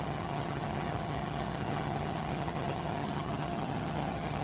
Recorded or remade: remade